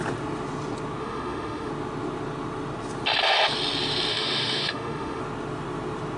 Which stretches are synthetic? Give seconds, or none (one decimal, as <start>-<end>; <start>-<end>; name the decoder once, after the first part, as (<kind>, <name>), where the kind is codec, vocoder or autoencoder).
1.0-1.7 (autoencoder, DAC-VAE); 4.1-5.2